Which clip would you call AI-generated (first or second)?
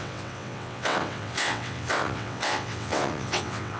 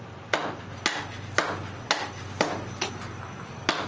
first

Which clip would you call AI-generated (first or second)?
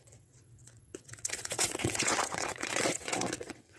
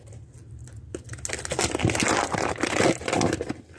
first